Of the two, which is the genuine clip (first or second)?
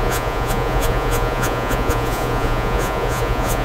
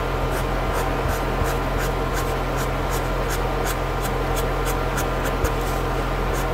second